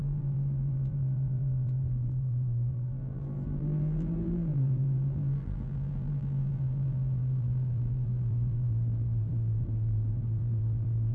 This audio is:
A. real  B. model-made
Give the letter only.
B